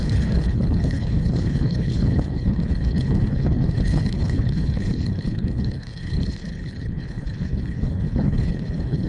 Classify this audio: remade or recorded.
remade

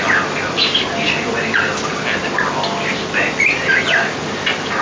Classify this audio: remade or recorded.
recorded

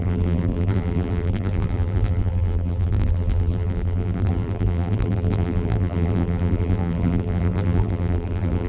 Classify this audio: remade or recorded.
remade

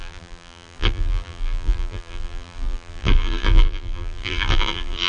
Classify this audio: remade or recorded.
remade